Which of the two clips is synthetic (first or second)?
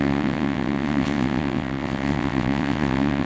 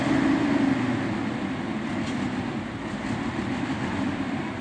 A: first